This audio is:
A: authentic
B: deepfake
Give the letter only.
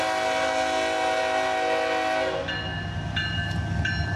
A